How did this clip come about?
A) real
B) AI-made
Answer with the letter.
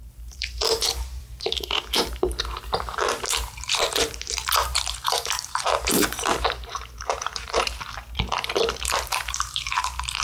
B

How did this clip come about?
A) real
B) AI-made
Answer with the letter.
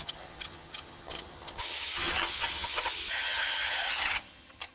B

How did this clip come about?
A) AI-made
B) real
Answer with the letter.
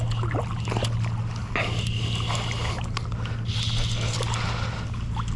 B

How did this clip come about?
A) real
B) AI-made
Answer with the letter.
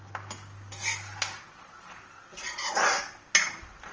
A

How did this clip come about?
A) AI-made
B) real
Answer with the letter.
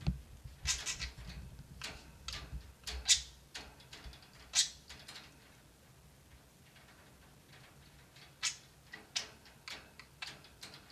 B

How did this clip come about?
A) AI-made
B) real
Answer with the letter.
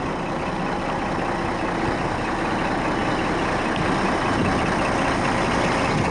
B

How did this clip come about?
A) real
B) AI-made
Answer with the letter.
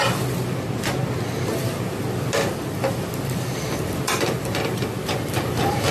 B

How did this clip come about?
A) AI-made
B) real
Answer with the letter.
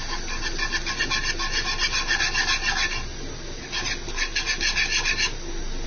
B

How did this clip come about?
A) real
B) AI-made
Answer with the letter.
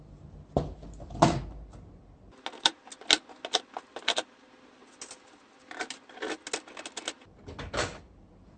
A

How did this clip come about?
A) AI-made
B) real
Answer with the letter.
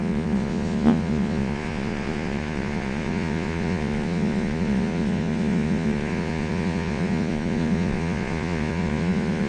A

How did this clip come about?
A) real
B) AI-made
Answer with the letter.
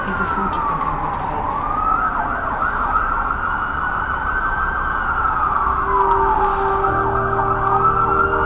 A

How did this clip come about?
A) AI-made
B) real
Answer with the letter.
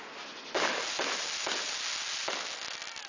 B